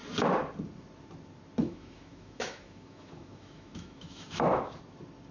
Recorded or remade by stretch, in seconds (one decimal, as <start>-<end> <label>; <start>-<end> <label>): 0.0-1.6 recorded; 1.6-4.8 remade; 4.8-5.3 recorded